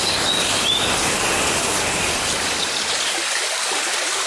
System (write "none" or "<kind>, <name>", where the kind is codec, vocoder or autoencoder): codec, DAC